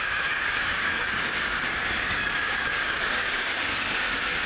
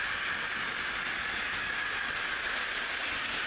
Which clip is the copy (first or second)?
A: first